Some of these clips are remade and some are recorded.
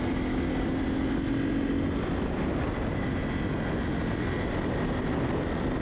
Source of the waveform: recorded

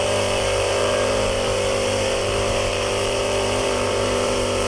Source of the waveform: remade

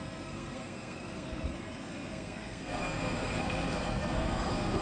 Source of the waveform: remade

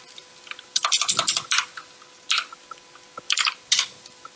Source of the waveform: recorded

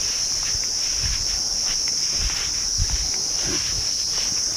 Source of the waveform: recorded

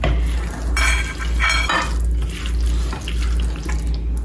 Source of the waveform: recorded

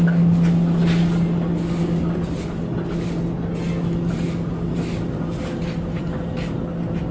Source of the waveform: recorded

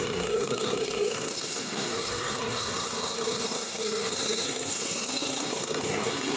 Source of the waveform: remade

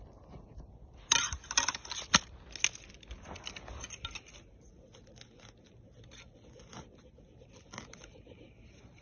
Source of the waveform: recorded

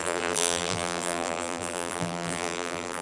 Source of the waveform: remade